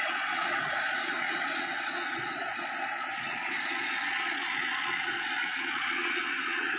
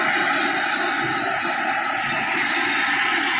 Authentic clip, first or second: second